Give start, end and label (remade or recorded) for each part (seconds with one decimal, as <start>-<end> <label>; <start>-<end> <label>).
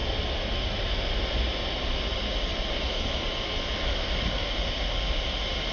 0.0-5.7 recorded